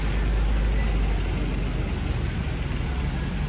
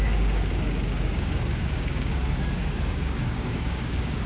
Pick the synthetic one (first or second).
second